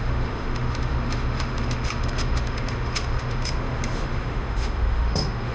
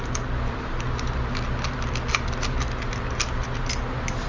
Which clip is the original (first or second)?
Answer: second